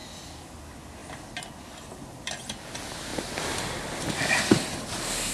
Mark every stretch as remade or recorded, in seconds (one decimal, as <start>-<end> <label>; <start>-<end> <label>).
0.0-5.3 recorded